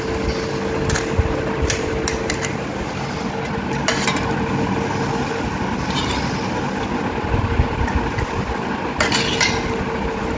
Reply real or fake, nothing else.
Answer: real